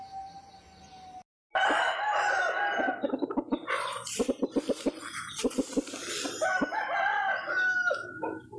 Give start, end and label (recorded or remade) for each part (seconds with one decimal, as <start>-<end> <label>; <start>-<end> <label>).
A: 0.0-8.6 recorded